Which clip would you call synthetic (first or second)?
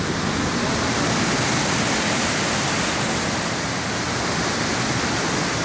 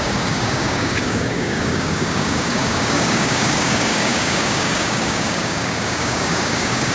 second